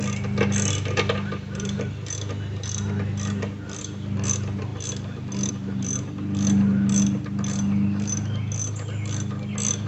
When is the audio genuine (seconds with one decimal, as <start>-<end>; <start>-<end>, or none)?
0.0-9.9